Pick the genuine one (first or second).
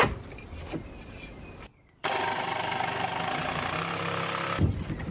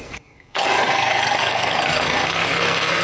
first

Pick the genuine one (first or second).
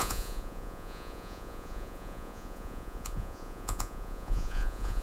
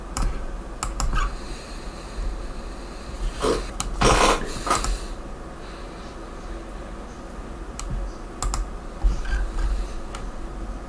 second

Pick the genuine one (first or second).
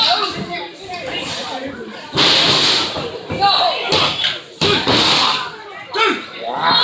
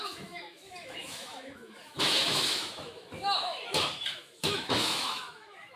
first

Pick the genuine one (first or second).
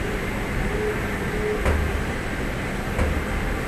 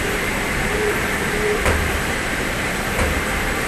first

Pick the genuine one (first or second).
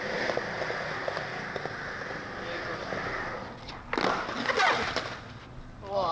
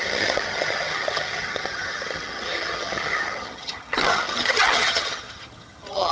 first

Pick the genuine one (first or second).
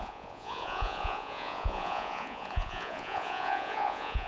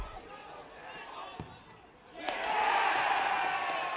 second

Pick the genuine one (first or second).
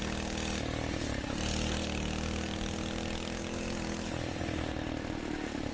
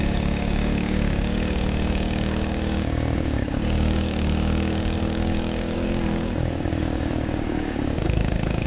first